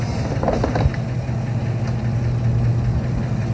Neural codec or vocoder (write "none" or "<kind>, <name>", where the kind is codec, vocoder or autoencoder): none